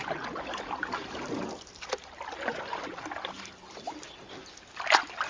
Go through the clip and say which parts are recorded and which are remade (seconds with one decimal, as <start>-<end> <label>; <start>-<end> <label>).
0.0-5.3 recorded